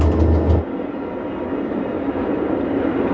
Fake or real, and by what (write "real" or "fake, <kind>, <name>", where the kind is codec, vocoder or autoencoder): real